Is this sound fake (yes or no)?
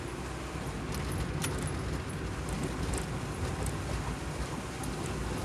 no